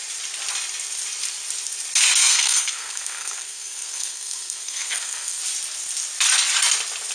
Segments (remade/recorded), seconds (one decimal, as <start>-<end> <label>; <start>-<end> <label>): 0.0-2.2 recorded; 2.2-5.4 remade; 5.4-7.1 recorded